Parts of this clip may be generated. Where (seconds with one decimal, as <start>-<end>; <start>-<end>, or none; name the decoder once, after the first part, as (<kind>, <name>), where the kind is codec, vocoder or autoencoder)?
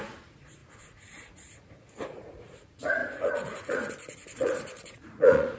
0.0-5.6 (vocoder, Vocos)